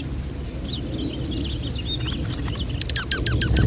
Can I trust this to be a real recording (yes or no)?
yes